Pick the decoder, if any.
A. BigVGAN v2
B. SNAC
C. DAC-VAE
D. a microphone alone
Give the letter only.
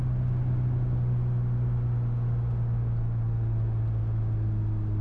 D